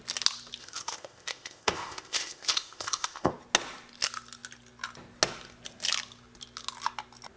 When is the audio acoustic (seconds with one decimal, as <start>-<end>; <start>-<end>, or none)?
0.0-0.6; 3.3-7.4